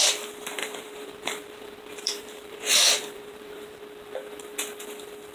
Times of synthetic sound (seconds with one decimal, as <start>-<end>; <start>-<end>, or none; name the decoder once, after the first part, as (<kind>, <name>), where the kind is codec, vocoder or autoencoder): 0.6-3.8 (vocoder, BigVGAN v2)

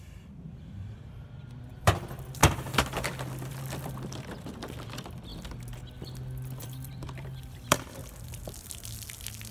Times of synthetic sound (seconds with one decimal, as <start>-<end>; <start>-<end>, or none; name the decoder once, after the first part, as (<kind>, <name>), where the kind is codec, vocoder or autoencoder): 0.0-2.4 (vocoder, BigVGAN v2); 3.5-5.3; 6.6-8.0